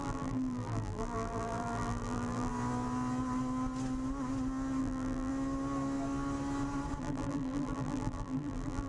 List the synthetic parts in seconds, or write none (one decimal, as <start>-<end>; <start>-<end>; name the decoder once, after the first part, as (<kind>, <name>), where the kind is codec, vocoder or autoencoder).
0.0-2.5 (vocoder, BigVGAN v2); 4.8-5.3; 7.0-8.9